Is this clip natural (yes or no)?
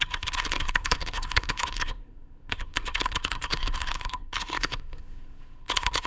no